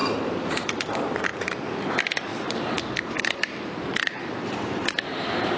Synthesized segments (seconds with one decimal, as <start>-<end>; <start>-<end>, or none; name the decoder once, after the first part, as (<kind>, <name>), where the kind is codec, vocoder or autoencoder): 0.0-0.5 (vocoder, BigVGAN v2); 2.3-2.8; 3.4-5.6